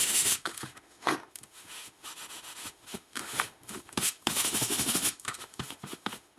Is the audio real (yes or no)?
no